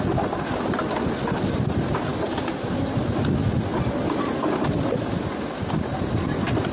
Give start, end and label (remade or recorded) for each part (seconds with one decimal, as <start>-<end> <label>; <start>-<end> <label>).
0.0-6.7 recorded